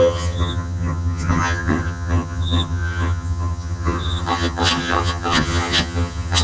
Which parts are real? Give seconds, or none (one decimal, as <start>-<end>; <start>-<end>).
none